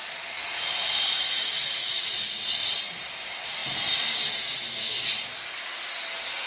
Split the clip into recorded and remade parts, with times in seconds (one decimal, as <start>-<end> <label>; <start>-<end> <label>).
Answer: 0.0-2.2 remade; 2.2-6.5 recorded